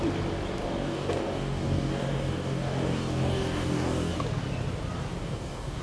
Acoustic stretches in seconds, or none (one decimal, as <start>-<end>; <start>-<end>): 0.0-0.6; 4.1-5.2